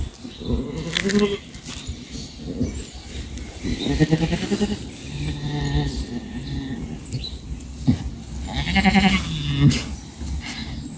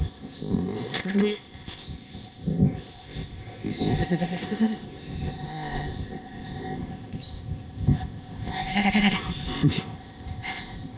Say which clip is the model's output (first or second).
second